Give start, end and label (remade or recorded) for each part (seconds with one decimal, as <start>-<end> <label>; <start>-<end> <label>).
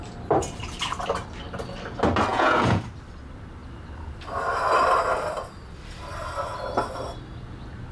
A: 0.0-2.3 recorded; 2.3-2.8 remade; 2.8-7.9 recorded